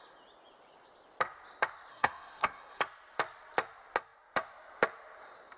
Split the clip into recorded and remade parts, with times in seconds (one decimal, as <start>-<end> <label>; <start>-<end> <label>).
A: 0.0-1.9 recorded; 1.9-2.8 remade; 2.8-5.6 recorded

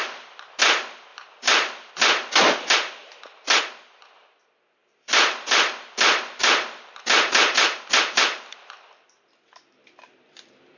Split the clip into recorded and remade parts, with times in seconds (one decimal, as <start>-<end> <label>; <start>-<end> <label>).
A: 0.0-1.1 recorded; 1.1-1.9 remade; 1.9-3.0 recorded; 3.0-3.6 remade; 3.6-4.8 recorded; 4.8-9.4 remade; 9.4-10.8 recorded

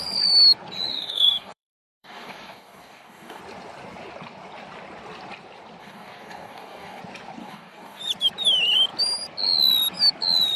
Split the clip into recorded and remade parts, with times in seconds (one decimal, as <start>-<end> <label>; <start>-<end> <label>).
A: 0.0-0.9 recorded; 0.9-3.4 remade; 3.4-5.8 recorded; 5.8-7.0 remade; 7.0-7.4 recorded; 7.4-8.0 remade; 8.0-10.6 recorded

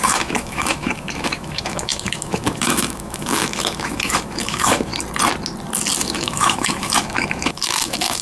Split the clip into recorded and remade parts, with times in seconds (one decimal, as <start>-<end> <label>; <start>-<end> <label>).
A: 0.0-4.9 remade; 4.9-6.0 recorded; 6.0-8.2 remade

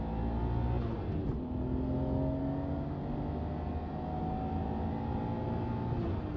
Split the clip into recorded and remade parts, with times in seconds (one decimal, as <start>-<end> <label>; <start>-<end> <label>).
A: 0.0-6.4 recorded

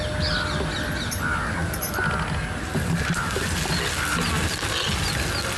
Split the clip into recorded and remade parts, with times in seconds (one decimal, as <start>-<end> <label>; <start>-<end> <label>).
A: 0.0-5.6 recorded